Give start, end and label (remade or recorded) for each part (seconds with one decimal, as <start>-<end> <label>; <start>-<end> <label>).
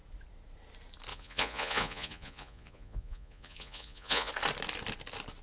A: 0.0-1.1 recorded; 1.1-4.3 remade; 4.3-5.4 recorded